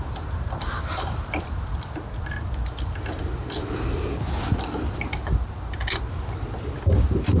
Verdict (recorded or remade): recorded